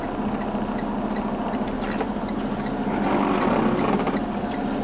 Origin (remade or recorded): recorded